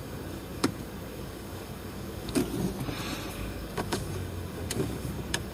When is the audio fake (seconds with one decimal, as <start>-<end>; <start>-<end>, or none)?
0.0-2.4; 3.3-5.5